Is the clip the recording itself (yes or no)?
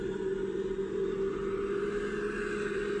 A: yes